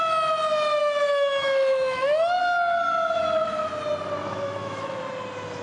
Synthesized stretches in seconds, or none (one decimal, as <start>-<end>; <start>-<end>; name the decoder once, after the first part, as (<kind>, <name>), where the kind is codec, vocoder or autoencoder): 0.8-2.4 (autoencoder, DAC-VAE); 4.2-5.0